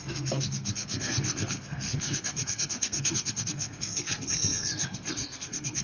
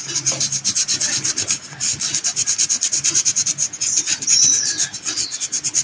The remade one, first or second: first